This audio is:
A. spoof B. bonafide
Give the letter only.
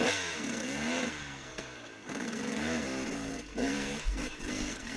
A